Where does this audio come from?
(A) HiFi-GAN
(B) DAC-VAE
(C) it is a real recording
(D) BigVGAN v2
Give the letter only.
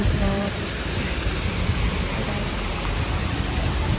D